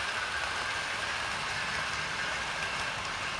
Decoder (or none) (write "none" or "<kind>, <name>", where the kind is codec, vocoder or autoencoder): none